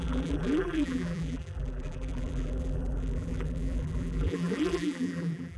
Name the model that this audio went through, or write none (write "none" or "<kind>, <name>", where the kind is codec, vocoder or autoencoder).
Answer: vocoder, BigVGAN v2